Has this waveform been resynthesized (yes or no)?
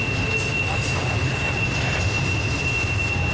no